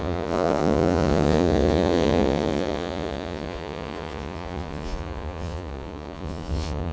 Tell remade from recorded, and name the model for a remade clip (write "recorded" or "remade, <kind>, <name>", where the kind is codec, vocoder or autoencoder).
remade, vocoder, Vocos